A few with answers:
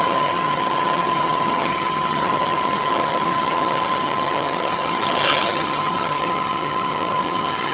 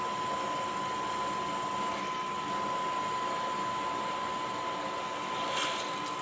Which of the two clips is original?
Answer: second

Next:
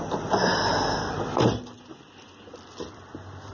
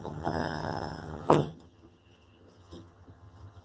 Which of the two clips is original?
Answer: first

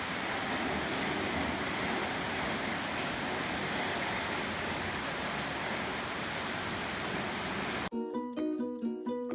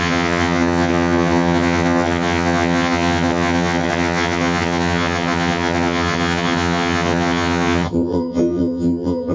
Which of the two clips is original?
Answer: first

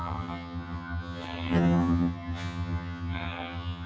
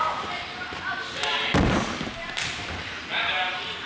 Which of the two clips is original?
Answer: second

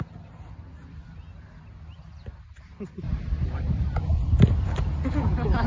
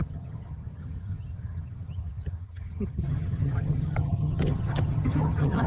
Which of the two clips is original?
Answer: first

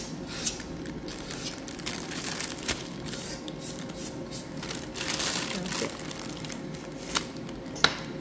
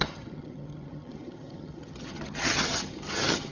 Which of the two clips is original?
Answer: first